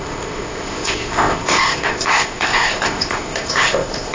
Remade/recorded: remade